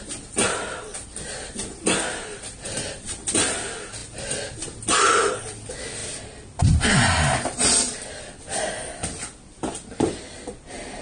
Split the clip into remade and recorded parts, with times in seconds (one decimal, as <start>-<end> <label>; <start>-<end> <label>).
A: 0.0-11.0 recorded

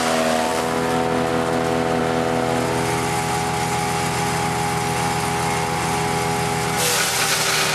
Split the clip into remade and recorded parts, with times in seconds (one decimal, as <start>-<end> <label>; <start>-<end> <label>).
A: 0.0-7.7 recorded

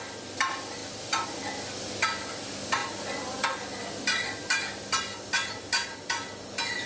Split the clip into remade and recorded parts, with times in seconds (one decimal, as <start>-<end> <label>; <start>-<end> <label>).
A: 0.0-6.9 recorded

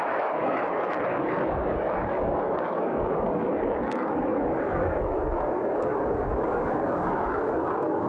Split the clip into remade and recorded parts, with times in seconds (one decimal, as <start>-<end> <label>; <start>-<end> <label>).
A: 0.0-8.1 remade

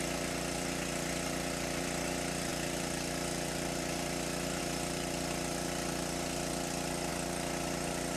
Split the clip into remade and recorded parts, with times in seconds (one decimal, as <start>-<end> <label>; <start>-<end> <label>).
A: 0.0-8.2 recorded

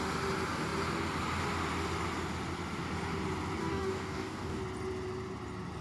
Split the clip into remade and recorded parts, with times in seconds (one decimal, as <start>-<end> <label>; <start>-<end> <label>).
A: 0.0-3.6 recorded; 3.6-4.6 remade; 4.6-5.8 recorded

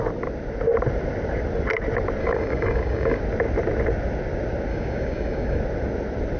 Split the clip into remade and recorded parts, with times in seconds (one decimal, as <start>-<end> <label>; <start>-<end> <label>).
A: 0.0-2.2 recorded; 2.2-3.2 remade; 3.2-4.7 recorded; 4.7-5.6 remade; 5.6-6.4 recorded

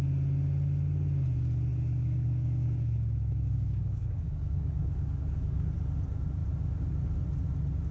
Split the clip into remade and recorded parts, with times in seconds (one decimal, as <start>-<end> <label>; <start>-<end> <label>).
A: 0.0-1.7 recorded; 1.7-5.7 remade; 5.7-7.9 recorded